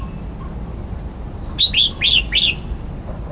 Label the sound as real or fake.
real